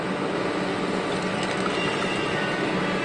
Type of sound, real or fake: real